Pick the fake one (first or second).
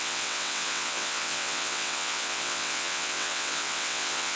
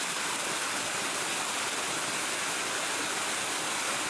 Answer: first